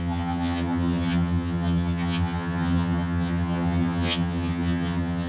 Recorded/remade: remade